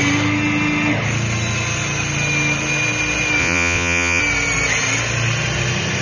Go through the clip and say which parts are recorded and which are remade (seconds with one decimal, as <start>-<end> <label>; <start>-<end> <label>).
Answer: 0.0-3.4 recorded; 3.4-4.2 remade; 4.2-6.0 recorded